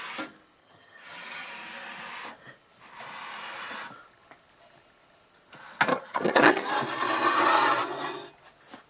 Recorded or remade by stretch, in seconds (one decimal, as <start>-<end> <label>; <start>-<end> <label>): 0.0-0.6 recorded; 0.6-1.5 remade; 1.5-5.9 recorded; 5.9-6.7 remade; 6.7-8.9 recorded